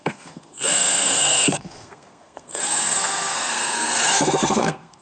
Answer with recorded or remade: remade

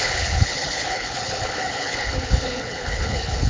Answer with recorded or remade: remade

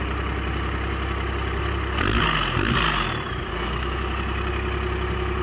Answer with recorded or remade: recorded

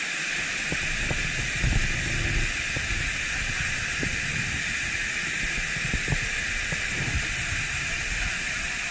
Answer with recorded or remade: recorded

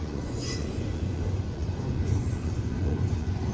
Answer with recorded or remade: remade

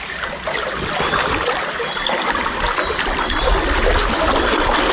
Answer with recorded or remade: recorded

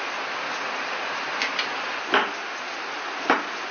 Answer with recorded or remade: recorded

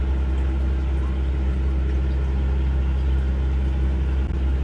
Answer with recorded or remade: recorded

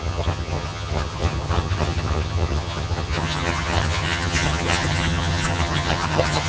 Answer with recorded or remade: remade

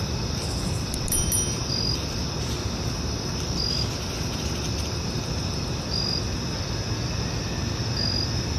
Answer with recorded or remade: recorded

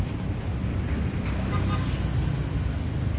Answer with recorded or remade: recorded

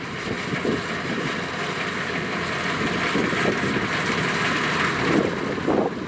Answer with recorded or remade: recorded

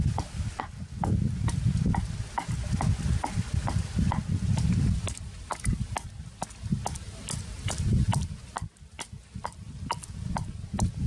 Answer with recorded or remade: recorded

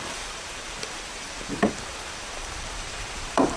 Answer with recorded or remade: remade